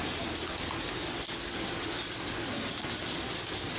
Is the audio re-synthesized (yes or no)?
no